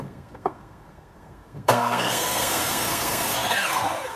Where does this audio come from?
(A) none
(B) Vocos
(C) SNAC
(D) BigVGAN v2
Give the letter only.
C